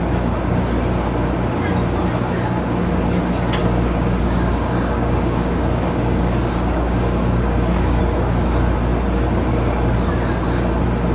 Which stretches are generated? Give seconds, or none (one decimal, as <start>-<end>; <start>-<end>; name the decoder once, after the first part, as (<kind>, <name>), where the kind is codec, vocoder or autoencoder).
3.6-8.0 (codec, DAC)